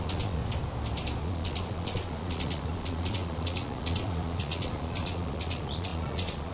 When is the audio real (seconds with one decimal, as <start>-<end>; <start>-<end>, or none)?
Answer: 0.4-1.2